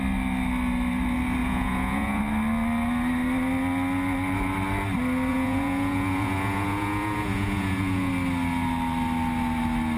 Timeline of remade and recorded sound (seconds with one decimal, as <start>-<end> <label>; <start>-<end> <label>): 0.0-1.4 recorded; 1.4-2.2 remade; 2.2-5.3 recorded; 5.3-8.1 remade; 8.1-10.0 recorded